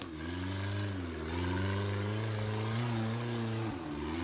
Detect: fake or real real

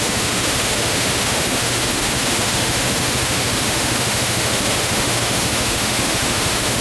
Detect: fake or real fake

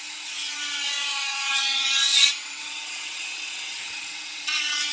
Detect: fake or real fake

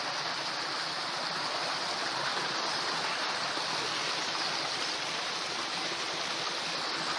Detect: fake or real real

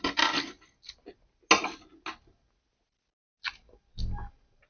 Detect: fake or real real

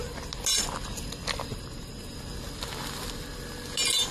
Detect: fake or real real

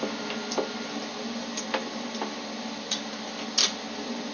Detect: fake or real real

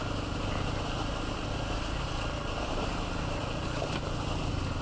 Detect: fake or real real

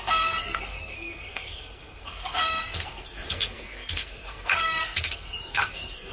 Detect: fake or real fake